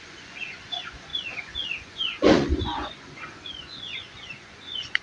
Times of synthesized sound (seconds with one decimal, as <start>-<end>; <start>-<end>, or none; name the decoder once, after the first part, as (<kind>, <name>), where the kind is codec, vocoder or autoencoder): 0.0-5.0 (vocoder, Vocos)